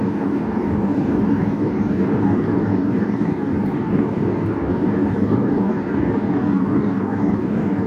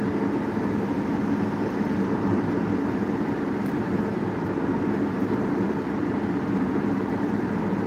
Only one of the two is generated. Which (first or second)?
first